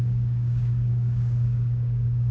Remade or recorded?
remade